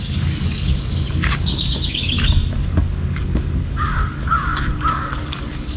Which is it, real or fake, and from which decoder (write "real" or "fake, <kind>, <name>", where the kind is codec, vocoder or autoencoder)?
fake, codec, DAC